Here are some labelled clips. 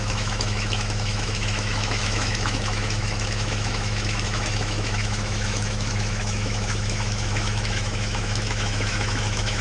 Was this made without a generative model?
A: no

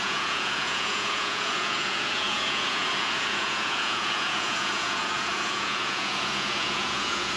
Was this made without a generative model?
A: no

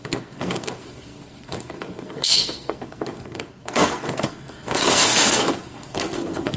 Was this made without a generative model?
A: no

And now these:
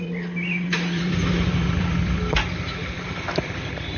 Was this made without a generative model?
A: no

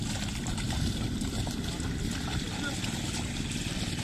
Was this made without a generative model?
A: yes